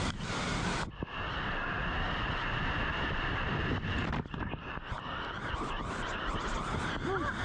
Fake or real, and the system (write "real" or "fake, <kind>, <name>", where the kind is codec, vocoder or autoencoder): real